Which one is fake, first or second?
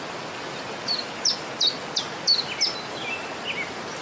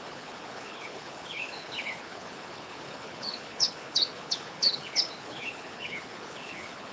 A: second